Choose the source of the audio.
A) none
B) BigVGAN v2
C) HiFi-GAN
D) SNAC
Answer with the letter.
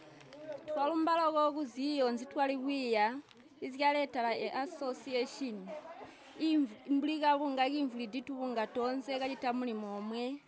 A